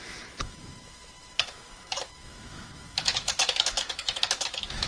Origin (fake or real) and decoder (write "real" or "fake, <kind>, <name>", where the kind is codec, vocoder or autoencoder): fake, autoencoder, DAC-VAE